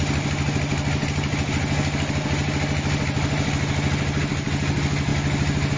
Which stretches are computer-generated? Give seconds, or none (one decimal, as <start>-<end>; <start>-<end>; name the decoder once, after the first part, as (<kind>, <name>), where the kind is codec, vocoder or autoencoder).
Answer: none